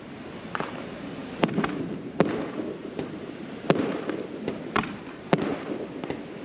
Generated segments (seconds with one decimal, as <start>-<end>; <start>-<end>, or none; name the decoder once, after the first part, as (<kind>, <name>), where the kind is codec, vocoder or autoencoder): 2.8-5.5 (vocoder, BigVGAN v2)